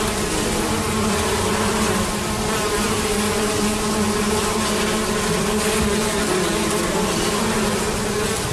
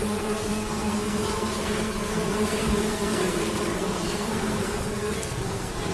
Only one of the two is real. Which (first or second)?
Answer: first